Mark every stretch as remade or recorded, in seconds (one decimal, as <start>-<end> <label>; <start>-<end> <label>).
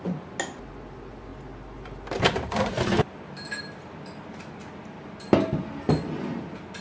0.0-6.8 recorded